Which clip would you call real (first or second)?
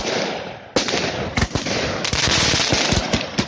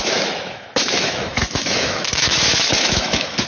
first